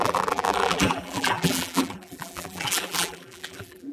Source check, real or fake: fake